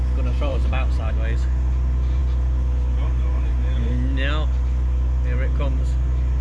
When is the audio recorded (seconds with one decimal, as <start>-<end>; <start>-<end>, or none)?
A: 0.0-0.5; 1.1-6.4